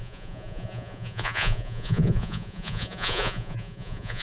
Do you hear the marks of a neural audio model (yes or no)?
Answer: yes